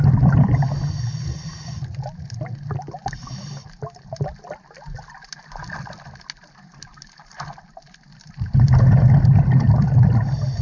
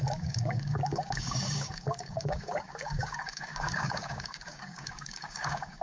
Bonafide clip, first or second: first